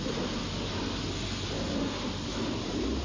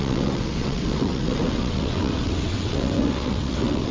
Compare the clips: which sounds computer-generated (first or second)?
second